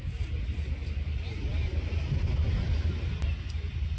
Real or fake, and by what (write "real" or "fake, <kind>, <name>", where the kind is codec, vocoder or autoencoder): real